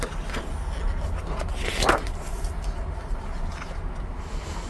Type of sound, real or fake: real